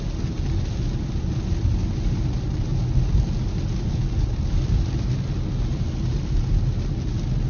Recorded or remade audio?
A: recorded